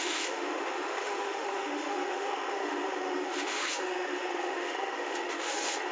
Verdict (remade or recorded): remade